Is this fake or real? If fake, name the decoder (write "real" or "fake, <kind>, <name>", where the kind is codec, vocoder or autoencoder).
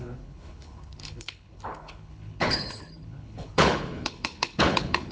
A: fake, codec, HILCodec